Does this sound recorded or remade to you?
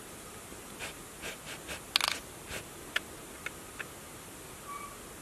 recorded